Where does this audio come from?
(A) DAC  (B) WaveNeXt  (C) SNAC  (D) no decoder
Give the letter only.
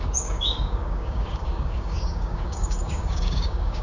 A